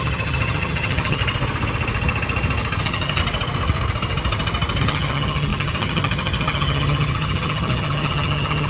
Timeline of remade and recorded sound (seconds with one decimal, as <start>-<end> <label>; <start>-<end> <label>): 0.0-1.2 remade; 1.2-2.8 recorded; 2.8-3.2 remade; 3.2-4.8 recorded; 4.8-8.7 remade